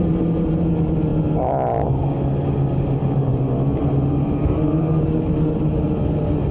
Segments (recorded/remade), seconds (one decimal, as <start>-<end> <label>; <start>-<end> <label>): 0.0-3.0 recorded; 3.0-5.6 remade; 5.6-6.5 recorded